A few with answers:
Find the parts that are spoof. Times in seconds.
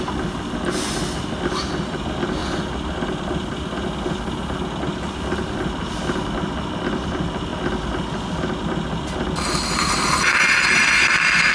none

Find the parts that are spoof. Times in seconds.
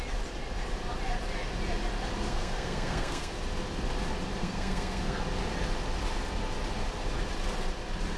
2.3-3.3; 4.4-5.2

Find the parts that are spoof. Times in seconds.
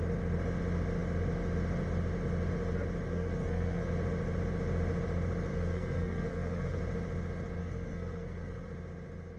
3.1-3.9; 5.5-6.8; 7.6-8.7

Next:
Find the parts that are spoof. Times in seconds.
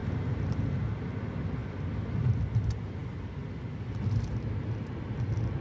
none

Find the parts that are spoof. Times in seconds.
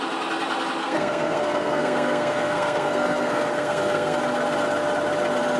0.8-4.2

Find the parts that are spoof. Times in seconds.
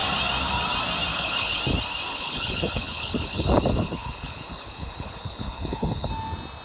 1.1-1.6; 2.1-6.1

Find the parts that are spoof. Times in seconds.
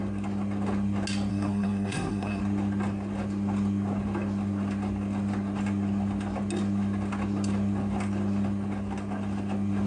1.3-2.4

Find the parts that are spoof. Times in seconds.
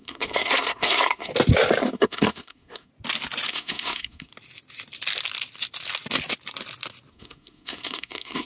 0.0-1.3; 1.8-2.9; 3.5-4.3; 7.1-8.4